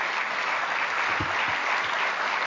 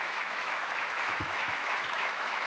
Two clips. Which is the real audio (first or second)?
first